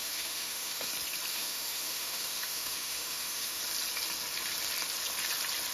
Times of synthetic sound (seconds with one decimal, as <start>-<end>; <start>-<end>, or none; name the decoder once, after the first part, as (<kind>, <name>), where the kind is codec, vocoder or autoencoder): 0.0-0.9 (autoencoder, DAC-VAE); 1.3-3.6